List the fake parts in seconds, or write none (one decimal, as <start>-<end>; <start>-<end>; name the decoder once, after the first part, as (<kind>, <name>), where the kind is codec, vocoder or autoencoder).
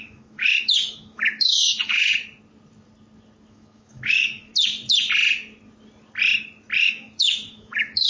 0.0-2.1 (autoencoder, DAC-VAE); 3.5-4.5; 6.8-8.1